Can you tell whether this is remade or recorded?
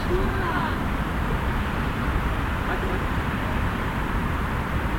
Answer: remade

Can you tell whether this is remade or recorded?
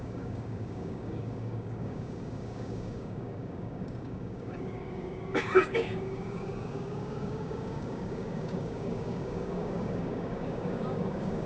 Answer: remade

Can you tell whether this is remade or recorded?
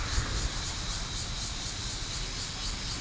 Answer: recorded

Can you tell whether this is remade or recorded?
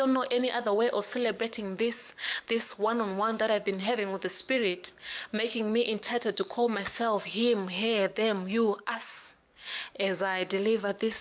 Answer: remade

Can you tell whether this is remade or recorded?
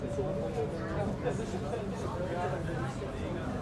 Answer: recorded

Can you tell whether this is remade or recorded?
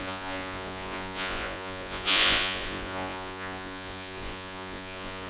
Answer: remade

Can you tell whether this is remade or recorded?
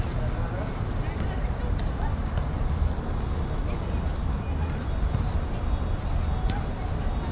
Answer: recorded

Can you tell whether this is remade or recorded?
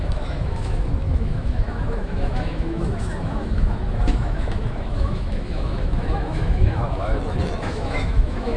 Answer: remade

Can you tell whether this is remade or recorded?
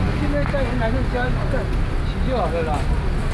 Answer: recorded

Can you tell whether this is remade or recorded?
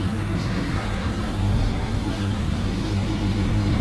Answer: remade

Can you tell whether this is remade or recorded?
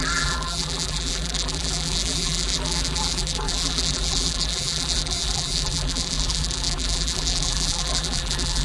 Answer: remade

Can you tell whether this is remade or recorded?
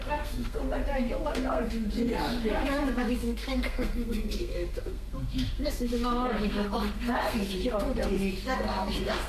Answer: remade